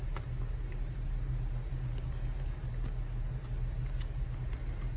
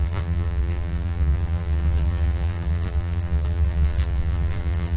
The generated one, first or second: second